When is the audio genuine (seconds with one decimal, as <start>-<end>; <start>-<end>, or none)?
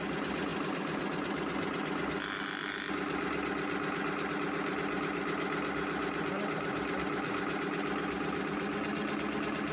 0.0-9.7